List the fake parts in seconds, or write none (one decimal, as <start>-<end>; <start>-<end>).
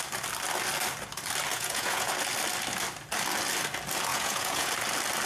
1.5-2.1; 4.1-4.7